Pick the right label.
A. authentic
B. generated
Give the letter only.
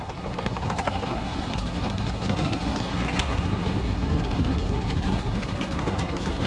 B